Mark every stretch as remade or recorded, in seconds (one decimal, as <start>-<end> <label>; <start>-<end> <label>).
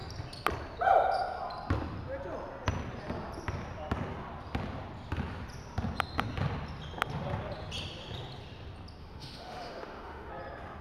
0.0-9.0 recorded; 9.0-10.3 remade; 10.3-10.8 recorded